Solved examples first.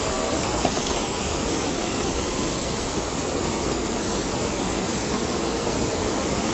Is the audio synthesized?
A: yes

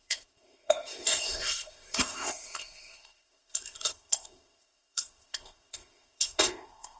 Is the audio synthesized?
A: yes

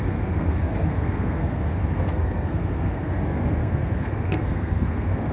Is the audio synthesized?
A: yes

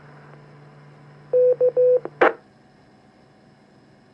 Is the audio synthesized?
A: no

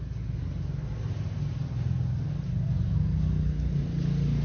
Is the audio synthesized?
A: no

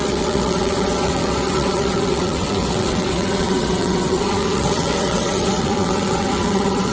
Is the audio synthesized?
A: yes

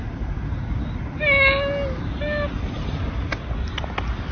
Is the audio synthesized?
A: no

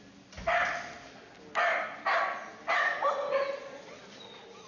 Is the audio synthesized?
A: no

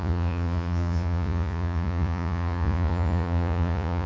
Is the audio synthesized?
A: yes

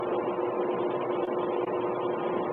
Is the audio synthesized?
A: no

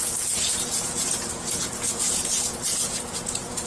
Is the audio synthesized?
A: yes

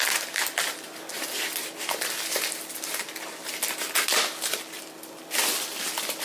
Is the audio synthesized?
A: no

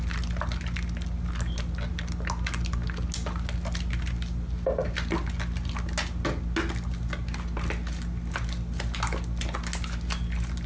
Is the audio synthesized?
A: no